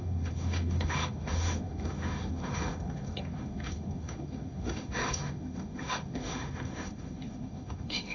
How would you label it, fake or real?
fake